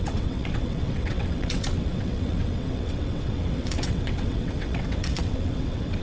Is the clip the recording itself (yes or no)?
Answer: no